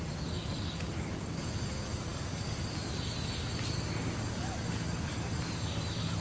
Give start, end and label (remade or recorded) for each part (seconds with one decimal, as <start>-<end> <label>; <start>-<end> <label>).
0.0-6.2 recorded